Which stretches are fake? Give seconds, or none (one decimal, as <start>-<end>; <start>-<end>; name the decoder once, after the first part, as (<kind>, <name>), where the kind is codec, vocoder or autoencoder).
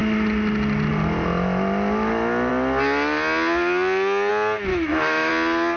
4.7-5.3 (autoencoder, DAC-VAE)